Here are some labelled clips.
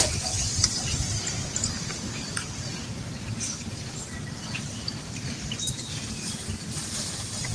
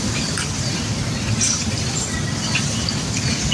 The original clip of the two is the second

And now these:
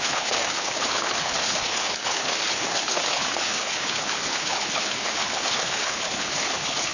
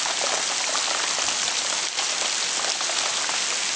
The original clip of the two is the second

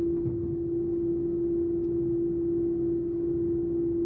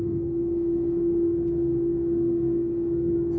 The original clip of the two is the first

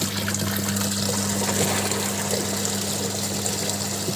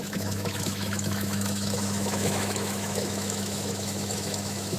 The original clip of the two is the first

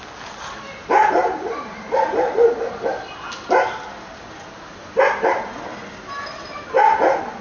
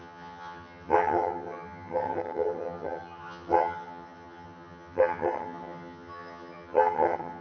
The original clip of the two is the first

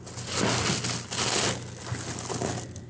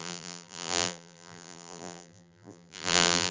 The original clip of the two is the first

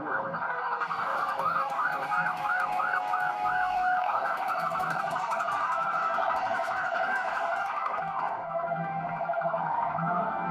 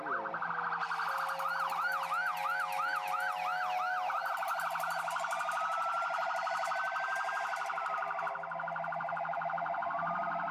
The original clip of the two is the second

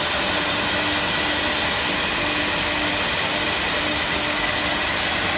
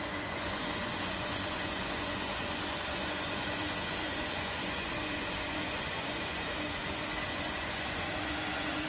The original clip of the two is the first